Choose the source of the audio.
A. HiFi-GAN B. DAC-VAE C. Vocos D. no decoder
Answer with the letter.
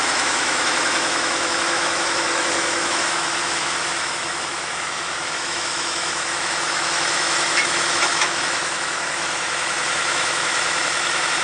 B